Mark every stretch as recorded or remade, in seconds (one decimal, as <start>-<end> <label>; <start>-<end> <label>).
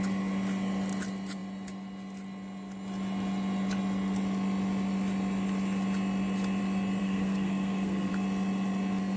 0.0-7.0 recorded; 7.0-8.1 remade; 8.1-9.2 recorded